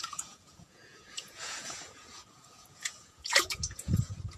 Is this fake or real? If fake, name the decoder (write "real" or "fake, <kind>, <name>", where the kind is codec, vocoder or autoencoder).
fake, vocoder, Vocos